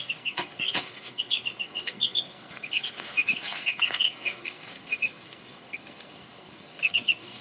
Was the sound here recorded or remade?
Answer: remade